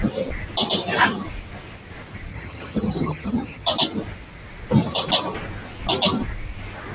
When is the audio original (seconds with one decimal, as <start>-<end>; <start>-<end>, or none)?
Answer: 0.0-2.3; 3.7-6.9